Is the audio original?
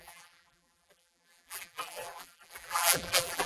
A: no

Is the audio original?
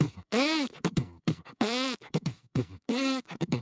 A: no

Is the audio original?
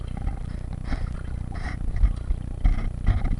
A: yes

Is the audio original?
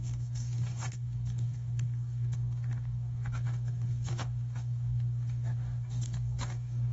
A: no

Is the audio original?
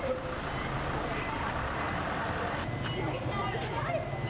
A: yes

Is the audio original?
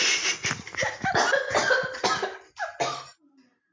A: yes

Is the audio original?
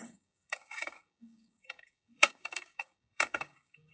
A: no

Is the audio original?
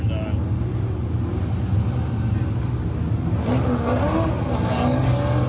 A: yes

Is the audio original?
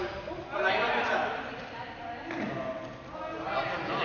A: yes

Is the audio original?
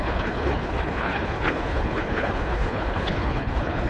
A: no